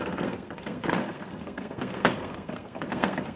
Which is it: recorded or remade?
remade